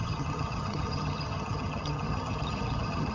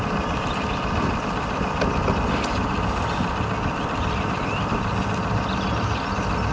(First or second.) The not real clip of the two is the first